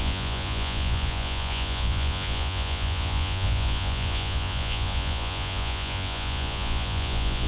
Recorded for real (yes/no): no